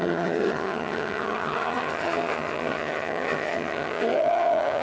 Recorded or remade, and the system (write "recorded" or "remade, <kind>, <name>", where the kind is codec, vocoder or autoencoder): remade, vocoder, HiFi-GAN